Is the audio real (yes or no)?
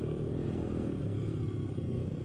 no